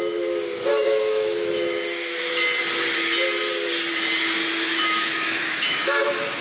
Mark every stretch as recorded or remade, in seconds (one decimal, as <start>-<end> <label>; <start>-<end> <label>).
0.0-0.7 recorded; 0.7-2.3 remade; 2.3-4.4 recorded; 4.4-6.4 remade